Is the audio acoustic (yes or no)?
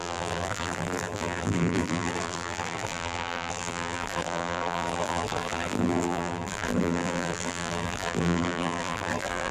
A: no